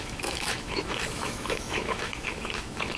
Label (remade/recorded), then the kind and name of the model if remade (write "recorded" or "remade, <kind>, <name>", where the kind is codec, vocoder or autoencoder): remade, autoencoder, DAC-VAE